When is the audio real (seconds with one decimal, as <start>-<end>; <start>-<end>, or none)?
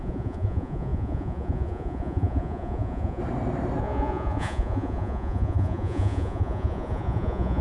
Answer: 3.2-3.8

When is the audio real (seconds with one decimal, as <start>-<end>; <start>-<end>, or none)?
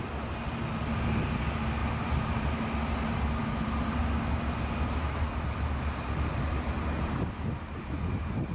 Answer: 0.0-1.8; 2.5-3.4; 4.0-8.5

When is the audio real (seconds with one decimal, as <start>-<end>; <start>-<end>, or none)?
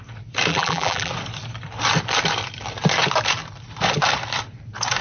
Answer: 0.0-0.5; 1.1-5.0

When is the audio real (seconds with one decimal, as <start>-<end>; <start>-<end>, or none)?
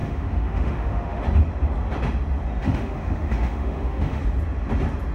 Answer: 1.2-2.6; 4.2-5.1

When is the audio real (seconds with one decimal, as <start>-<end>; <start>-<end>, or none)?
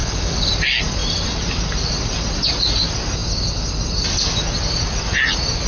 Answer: 0.5-5.7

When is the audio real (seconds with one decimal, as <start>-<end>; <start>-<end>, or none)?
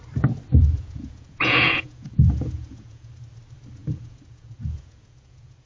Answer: 0.0-0.6; 3.1-3.8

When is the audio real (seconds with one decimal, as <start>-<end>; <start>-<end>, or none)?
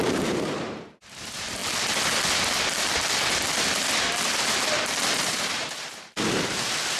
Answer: 1.6-5.2